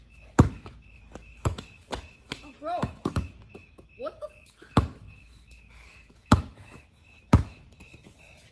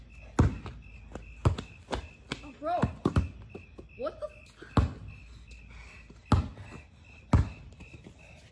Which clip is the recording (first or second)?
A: second